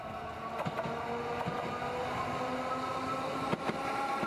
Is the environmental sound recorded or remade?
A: recorded